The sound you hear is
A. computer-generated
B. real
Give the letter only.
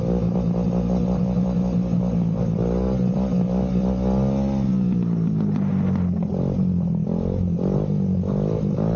B